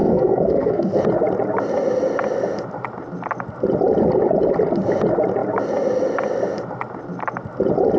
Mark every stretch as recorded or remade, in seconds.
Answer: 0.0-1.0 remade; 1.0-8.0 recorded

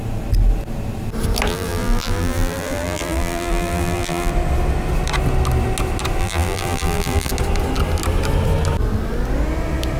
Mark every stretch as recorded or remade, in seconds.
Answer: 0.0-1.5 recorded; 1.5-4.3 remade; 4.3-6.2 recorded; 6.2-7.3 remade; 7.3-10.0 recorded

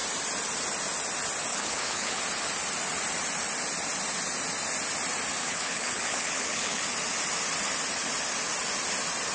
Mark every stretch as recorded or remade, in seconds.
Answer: 0.0-1.5 recorded; 1.5-2.2 remade; 2.2-5.4 recorded; 5.4-6.8 remade; 6.8-9.3 recorded

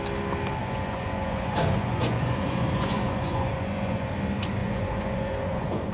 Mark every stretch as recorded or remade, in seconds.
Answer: 0.0-0.6 recorded; 0.6-4.1 remade; 4.1-4.6 recorded; 4.6-5.9 remade